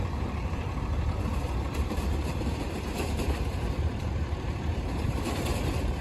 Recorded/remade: remade